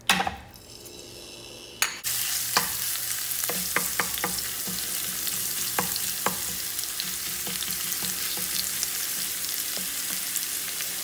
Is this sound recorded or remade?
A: recorded